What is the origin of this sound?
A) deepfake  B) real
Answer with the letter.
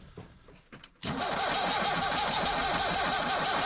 B